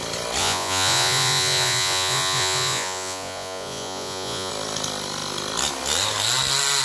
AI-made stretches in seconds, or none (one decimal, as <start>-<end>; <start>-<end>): 0.4-4.5